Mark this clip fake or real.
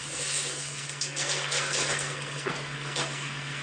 fake